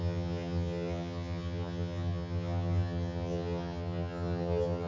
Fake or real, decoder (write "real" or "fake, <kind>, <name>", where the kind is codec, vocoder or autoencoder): fake, vocoder, HiFi-GAN